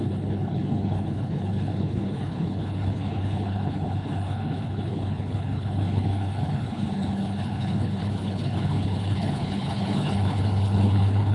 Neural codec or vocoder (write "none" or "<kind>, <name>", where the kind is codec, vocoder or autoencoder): codec, HILCodec